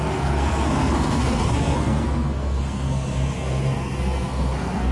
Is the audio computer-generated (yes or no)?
yes